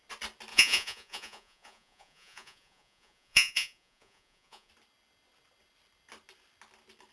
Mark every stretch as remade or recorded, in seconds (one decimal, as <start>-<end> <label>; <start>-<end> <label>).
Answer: 0.0-0.5 recorded; 0.5-4.7 remade; 4.7-7.1 recorded